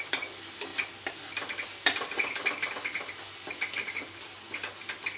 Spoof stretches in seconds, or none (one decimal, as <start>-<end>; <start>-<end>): none